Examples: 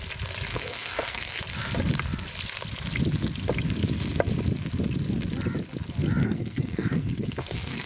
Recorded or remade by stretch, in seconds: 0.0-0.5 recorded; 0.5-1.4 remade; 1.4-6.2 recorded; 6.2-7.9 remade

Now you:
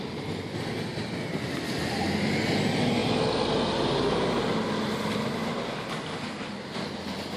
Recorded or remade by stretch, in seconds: 0.0-7.4 recorded

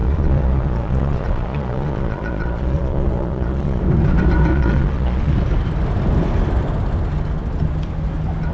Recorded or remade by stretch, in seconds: 0.0-3.8 remade; 3.8-4.5 recorded; 4.5-5.3 remade; 5.3-8.5 recorded

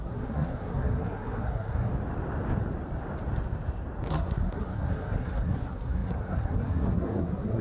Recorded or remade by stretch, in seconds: 0.0-1.9 remade; 1.9-4.1 recorded; 4.1-7.6 remade